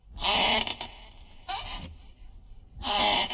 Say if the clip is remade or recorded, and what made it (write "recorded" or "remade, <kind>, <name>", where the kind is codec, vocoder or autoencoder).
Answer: recorded